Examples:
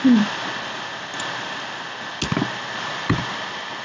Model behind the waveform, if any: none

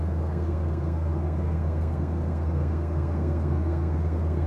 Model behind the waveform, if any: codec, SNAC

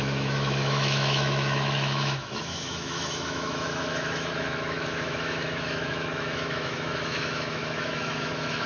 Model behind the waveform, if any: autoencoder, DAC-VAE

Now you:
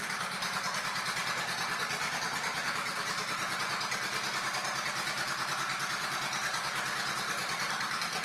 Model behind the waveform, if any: vocoder, BigVGAN v2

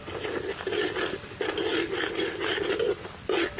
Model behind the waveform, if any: none